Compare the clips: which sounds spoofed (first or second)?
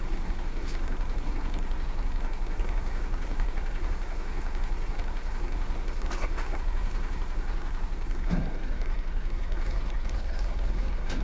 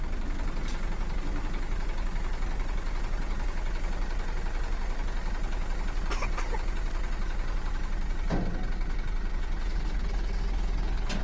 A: first